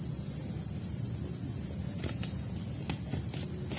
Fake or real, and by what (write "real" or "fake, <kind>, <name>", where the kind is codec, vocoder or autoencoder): real